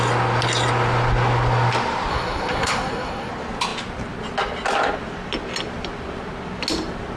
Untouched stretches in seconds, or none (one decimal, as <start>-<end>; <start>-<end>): 0.0-2.1; 3.3-7.2